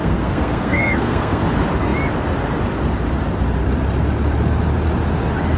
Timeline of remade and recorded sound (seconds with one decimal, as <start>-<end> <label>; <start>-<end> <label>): 0.0-1.4 remade; 1.4-5.6 recorded